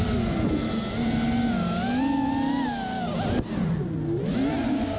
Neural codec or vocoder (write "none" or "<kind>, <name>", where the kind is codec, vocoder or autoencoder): none